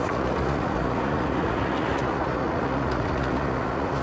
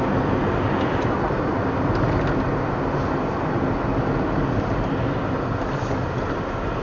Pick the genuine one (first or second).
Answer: second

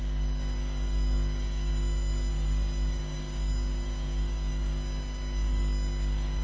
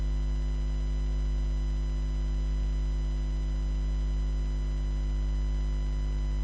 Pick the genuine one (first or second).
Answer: second